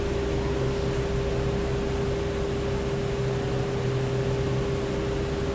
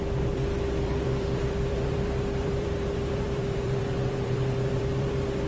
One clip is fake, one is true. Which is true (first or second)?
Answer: first